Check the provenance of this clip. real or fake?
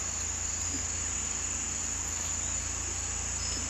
real